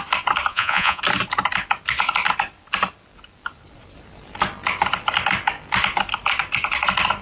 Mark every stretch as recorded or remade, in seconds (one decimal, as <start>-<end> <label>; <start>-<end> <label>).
0.0-0.5 recorded; 0.5-1.0 remade; 1.0-7.2 recorded